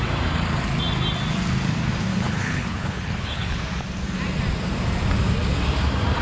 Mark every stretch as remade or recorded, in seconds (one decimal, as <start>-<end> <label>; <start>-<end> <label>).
0.0-2.1 recorded; 2.1-3.6 remade; 3.6-6.2 recorded